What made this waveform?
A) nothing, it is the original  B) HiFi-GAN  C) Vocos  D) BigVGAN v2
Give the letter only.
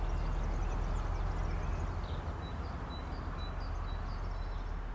A